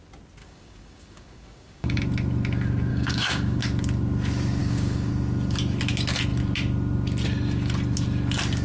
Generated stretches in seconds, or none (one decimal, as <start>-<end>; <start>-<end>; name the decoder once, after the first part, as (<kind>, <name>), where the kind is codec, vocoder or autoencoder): 0.4-2.0 (codec, DAC); 2.9-3.6; 4.6-5.1